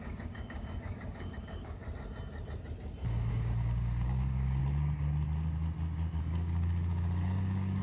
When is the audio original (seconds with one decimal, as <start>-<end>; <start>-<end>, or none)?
1.8-3.3; 4.6-6.2